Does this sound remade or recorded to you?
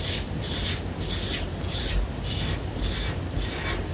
recorded